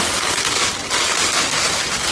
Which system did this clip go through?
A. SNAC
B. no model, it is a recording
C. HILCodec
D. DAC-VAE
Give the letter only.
B